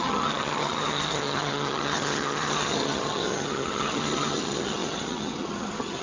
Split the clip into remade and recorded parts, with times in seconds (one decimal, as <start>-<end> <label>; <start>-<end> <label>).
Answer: 0.0-6.0 remade